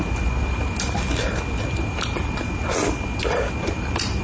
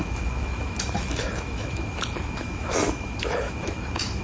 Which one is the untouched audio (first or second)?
first